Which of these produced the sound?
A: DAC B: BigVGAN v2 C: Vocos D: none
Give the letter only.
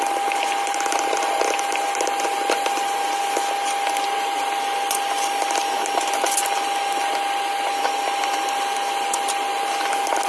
D